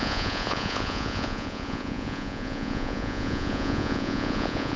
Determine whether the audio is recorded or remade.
remade